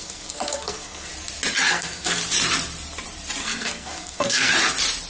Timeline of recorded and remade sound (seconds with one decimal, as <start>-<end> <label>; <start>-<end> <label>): 0.0-1.1 remade; 1.1-1.7 recorded; 1.7-2.2 remade; 2.2-3.4 recorded; 3.4-4.5 remade; 4.5-5.1 recorded